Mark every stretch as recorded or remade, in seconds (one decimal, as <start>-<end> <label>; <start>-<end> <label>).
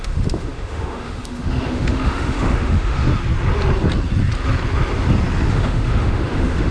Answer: 0.0-3.1 remade; 3.1-5.5 recorded; 5.5-6.7 remade